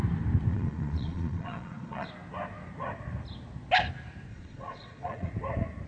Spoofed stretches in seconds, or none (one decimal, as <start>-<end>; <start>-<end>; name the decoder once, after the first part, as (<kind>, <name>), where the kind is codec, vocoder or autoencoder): 0.5-2.1 (vocoder, Vocos); 4.3-5.3